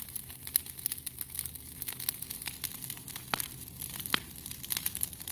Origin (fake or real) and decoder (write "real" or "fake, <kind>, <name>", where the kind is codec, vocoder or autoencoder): real